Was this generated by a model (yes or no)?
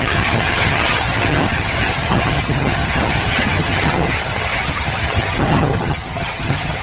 yes